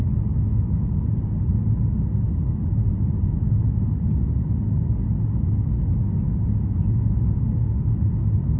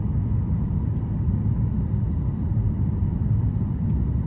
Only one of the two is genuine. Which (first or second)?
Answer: first